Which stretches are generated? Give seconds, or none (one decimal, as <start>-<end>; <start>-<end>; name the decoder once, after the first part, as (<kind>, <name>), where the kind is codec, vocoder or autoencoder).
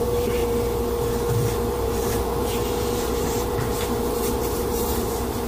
0.0-0.4 (vocoder, BigVGAN v2); 1.7-5.5